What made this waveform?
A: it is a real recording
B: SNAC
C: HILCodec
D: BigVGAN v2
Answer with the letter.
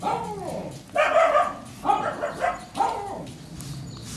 A